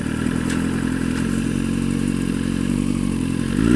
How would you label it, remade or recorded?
remade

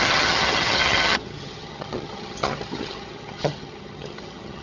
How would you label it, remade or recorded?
remade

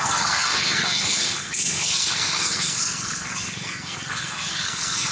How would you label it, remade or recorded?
remade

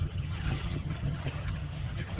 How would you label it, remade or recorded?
remade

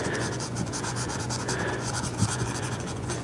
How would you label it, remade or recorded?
remade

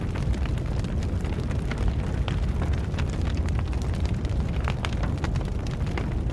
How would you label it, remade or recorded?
recorded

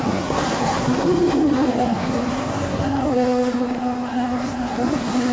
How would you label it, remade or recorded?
remade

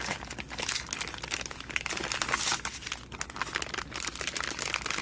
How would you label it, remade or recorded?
recorded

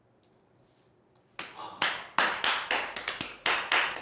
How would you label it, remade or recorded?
recorded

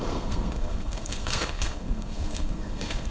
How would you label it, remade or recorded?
remade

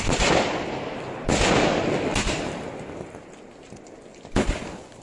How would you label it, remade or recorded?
recorded